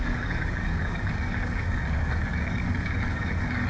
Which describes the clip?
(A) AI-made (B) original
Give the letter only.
A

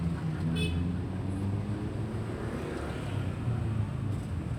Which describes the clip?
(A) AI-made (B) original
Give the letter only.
B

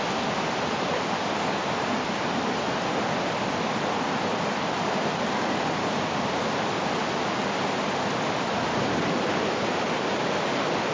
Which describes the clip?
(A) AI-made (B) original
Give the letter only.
B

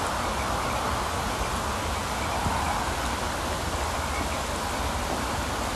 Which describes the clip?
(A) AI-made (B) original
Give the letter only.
B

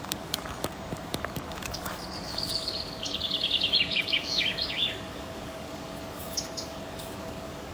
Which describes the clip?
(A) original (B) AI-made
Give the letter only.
B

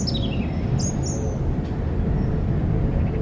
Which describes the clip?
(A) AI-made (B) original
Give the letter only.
B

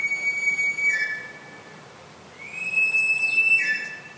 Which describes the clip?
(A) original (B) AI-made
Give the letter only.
A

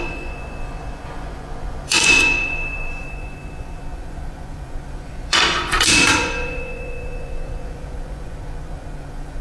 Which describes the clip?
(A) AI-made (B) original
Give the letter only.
A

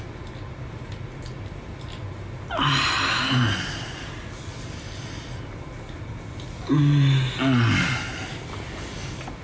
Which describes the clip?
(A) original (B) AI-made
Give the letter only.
A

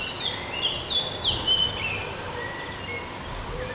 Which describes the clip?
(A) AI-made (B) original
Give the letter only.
B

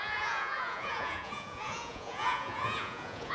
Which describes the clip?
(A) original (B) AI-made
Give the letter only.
B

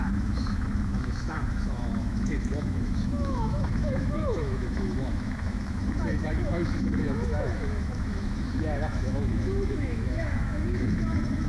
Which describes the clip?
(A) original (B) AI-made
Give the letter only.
B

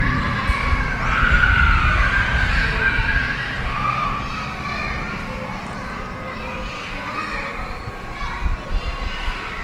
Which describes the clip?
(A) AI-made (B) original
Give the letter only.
B